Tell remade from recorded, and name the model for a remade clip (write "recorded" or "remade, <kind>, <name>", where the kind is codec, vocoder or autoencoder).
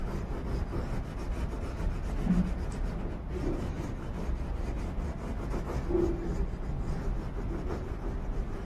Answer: recorded